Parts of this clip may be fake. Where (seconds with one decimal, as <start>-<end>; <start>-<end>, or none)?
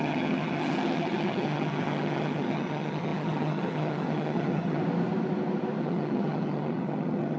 0.0-4.8; 5.8-7.4